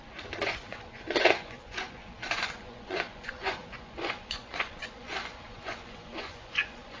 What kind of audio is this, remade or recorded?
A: remade